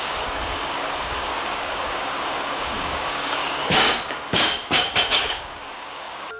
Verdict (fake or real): fake